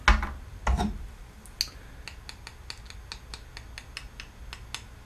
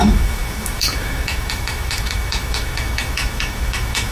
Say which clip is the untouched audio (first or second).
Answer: first